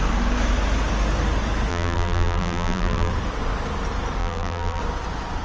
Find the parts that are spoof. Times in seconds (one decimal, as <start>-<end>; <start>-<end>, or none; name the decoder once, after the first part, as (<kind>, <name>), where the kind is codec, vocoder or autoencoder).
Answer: 1.7-3.1 (vocoder, BigVGAN v2); 4.2-4.8